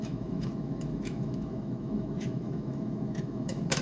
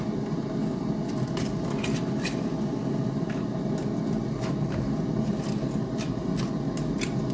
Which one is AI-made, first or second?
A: first